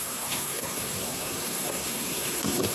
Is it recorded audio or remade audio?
remade